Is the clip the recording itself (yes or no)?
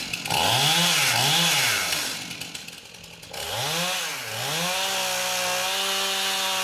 yes